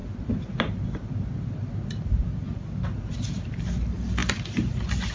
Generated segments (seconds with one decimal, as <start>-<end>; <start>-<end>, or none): 4.2-5.1